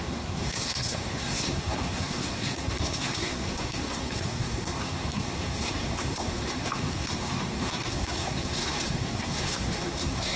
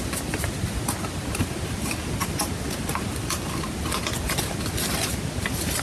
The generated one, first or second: first